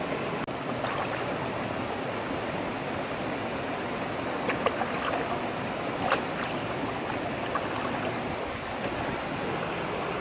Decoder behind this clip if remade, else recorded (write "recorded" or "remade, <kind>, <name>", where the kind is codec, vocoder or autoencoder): recorded